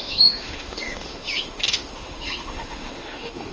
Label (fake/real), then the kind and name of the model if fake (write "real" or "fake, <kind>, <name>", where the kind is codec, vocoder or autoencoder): fake, autoencoder, DAC-VAE